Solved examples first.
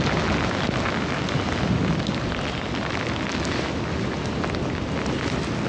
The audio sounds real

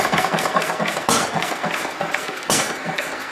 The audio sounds fake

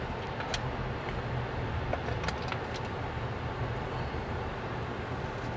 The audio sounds real